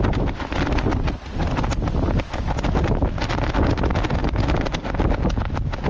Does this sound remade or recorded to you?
recorded